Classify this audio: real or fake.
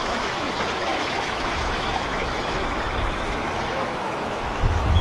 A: fake